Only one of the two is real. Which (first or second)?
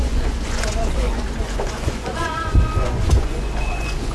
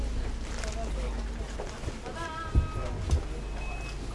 second